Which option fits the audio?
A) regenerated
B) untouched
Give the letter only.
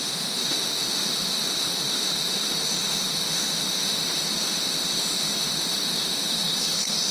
A